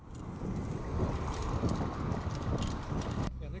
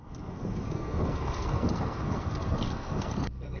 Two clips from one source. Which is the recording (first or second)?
first